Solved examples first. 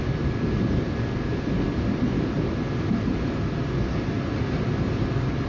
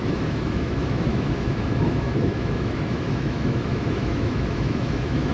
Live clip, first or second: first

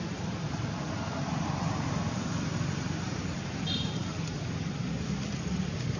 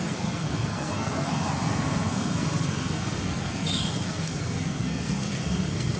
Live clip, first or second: first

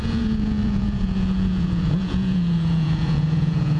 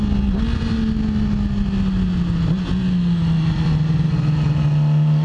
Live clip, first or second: second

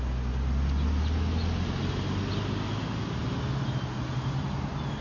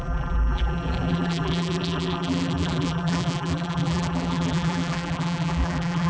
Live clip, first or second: first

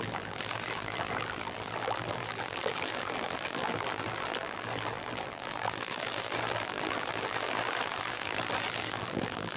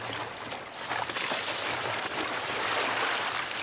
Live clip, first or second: second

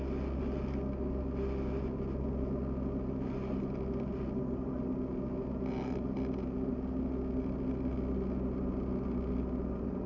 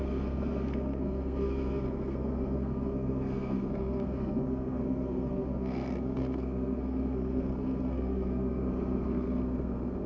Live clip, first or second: first